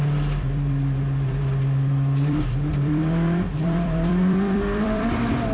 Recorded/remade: remade